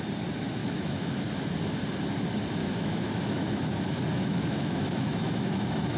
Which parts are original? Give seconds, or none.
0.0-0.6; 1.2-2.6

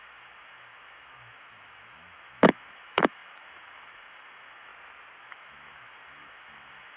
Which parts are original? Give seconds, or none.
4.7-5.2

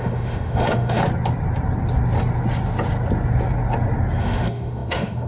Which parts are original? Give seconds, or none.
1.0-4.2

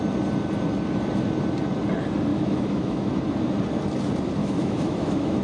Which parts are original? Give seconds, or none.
0.0-2.3; 3.1-4.4

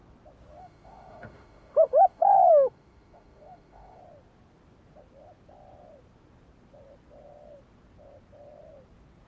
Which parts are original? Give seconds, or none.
0.0-0.6; 4.0-9.3

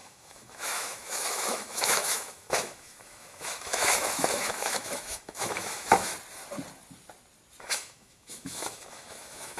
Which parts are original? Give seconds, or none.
6.1-7.6